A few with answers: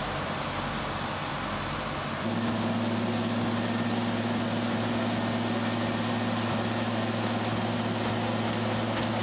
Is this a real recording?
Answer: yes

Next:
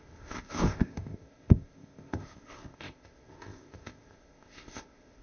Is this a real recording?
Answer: no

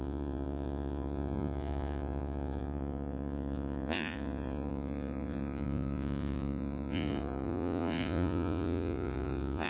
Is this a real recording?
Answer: no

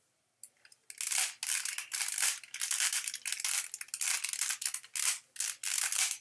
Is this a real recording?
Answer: yes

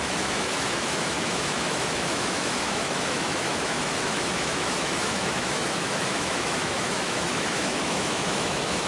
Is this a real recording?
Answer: no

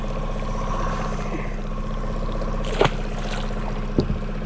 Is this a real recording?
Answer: yes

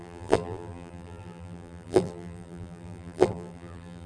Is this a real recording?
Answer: no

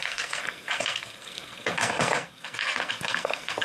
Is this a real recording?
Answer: no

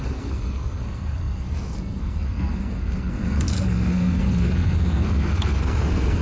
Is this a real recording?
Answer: no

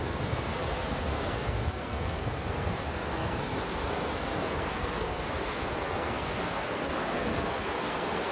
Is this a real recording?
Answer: no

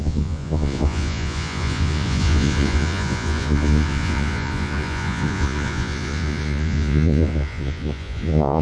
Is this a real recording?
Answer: no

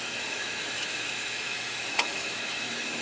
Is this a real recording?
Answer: no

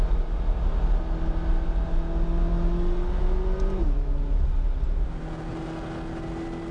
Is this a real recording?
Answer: yes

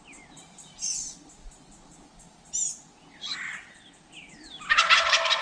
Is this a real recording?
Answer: yes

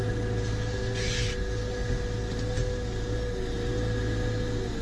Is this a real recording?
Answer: yes